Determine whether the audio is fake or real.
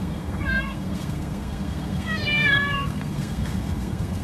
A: fake